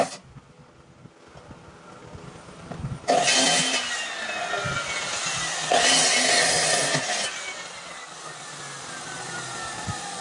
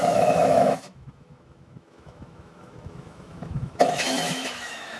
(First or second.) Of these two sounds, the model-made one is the second